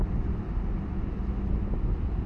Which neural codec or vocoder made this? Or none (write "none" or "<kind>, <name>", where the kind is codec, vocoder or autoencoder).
none